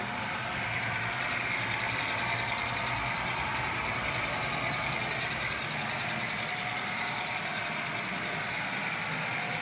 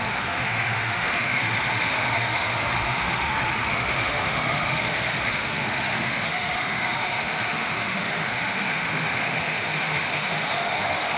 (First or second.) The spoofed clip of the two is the second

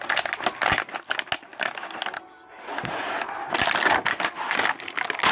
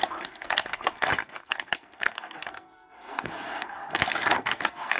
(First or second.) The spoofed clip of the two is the second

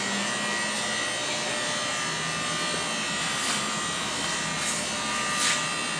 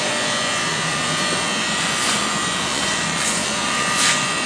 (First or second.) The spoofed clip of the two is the second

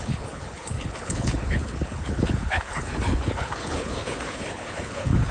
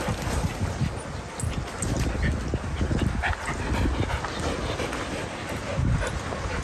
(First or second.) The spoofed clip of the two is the first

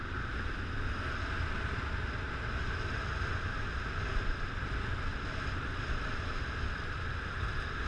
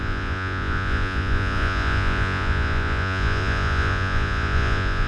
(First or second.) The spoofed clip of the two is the second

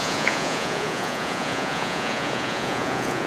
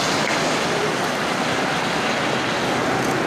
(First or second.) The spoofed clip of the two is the first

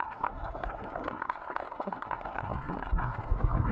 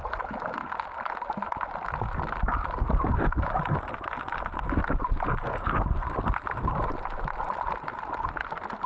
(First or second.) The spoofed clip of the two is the first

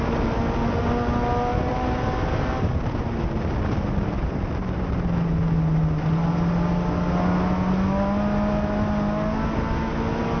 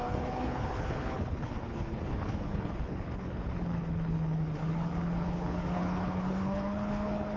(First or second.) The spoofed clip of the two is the second